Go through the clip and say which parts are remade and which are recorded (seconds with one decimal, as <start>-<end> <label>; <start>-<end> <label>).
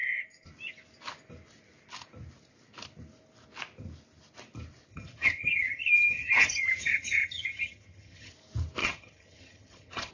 0.0-4.9 recorded; 4.9-8.3 remade; 8.3-8.8 recorded; 8.8-10.1 remade